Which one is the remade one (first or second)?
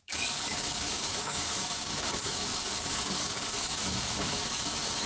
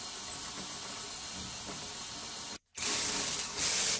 first